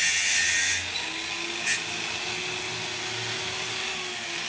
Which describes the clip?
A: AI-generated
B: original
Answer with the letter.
B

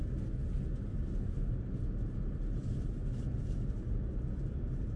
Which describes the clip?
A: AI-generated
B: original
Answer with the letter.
B